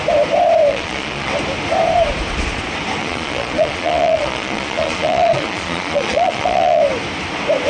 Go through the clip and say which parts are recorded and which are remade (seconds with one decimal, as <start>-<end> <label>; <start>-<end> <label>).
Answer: 0.0-0.7 recorded; 0.7-1.3 remade; 1.3-3.0 recorded; 3.0-6.8 remade; 6.8-7.7 recorded